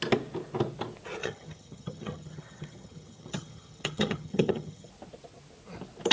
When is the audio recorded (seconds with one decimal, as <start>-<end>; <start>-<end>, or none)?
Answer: 0.0-1.2; 4.9-6.1